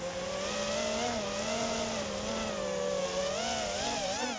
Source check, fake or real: real